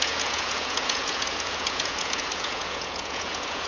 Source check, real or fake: fake